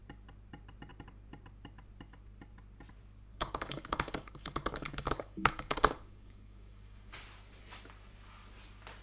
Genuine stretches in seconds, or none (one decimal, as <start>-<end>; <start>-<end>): 0.0-3.3; 7.1-9.0